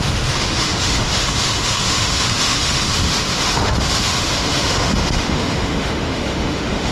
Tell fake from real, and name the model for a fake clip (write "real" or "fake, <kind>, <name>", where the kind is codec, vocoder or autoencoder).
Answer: fake, autoencoder, DAC-VAE